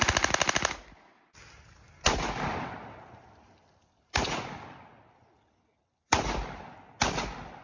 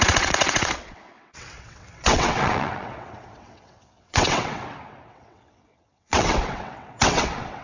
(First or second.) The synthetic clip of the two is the second